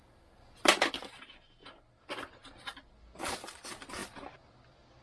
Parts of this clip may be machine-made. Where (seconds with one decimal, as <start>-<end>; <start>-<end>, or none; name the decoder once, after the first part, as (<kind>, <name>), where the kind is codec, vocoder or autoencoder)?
none